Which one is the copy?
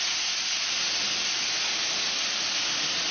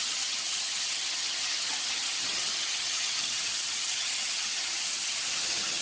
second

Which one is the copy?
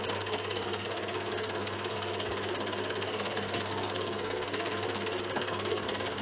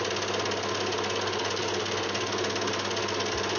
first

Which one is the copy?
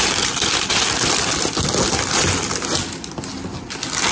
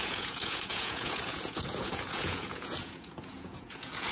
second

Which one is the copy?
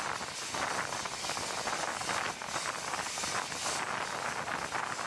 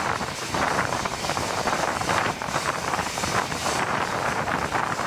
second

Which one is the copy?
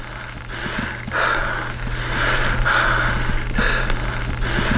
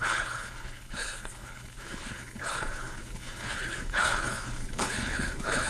second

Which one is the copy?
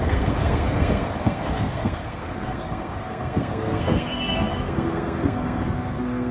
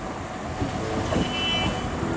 first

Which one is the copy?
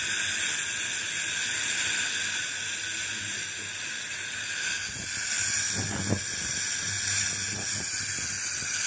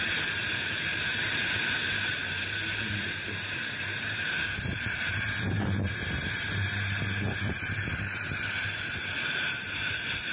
second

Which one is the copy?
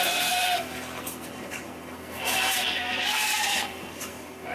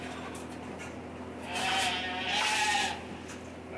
first